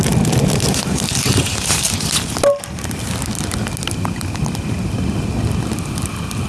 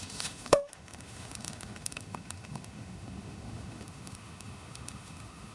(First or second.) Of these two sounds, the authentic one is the first